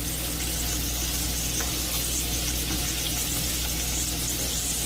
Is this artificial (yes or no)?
no